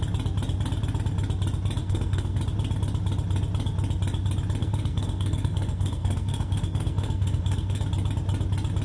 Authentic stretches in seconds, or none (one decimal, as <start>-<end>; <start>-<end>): 0.0-1.8; 2.4-4.6; 7.8-8.8